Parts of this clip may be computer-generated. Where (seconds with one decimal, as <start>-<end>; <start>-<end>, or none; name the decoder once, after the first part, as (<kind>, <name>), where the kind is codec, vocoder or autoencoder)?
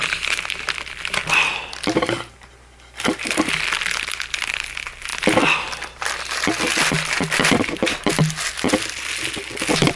none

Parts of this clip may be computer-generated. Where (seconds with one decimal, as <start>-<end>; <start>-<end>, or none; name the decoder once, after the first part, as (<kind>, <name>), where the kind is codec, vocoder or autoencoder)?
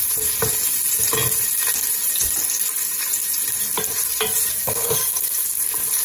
4.6-5.3 (codec, SNAC)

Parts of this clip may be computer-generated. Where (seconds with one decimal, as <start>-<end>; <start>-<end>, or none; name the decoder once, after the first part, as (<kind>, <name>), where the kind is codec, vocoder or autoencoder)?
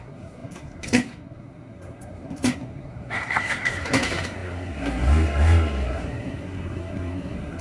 0.0-7.6 (codec, SNAC)